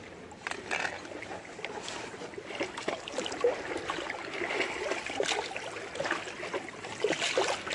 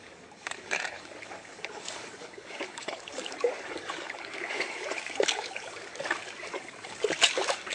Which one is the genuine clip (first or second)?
first